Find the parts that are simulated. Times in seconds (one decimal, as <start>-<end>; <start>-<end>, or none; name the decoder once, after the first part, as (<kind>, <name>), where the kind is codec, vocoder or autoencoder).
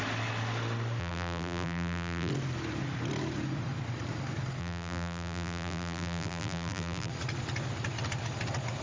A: 1.0-2.3 (vocoder, BigVGAN v2); 4.6-7.1